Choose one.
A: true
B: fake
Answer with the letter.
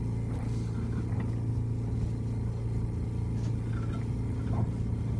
A